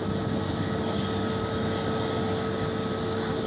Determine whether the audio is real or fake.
real